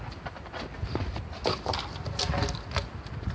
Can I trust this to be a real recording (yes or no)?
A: yes